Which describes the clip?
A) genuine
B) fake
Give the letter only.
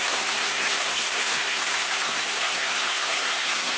B